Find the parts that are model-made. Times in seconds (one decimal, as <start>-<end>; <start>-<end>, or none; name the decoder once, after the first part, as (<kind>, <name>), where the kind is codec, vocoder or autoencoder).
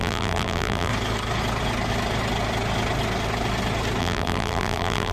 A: 0.0-0.9 (vocoder, BigVGAN v2); 4.0-5.1